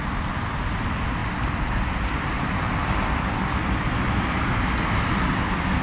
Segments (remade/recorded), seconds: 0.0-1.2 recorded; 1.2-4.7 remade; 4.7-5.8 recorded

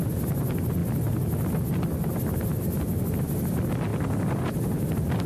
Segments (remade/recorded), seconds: 0.0-3.9 recorded; 3.9-4.8 remade; 4.8-5.3 recorded

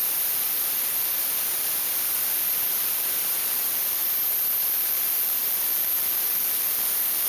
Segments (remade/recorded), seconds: 0.0-4.0 remade; 4.0-4.9 recorded; 4.9-7.3 remade

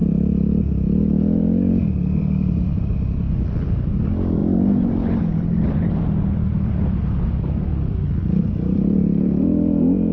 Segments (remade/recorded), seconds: 0.0-7.7 recorded; 7.7-9.0 remade; 9.0-10.1 recorded

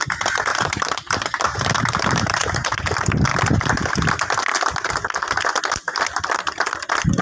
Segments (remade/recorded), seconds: 0.0-0.5 recorded; 0.5-2.8 remade; 2.8-7.2 recorded

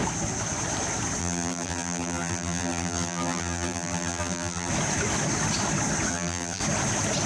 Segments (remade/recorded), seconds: 0.0-1.2 recorded; 1.2-4.7 remade; 4.7-6.1 recorded; 6.1-6.6 remade; 6.6-7.3 recorded